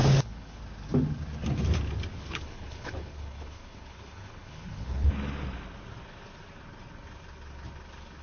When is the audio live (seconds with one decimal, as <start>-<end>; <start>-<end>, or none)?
0.6-2.1; 5.1-8.2